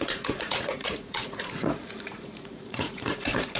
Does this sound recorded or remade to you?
remade